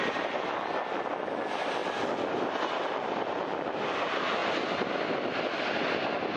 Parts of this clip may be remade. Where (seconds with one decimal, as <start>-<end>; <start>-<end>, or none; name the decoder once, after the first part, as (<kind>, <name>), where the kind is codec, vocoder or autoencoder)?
none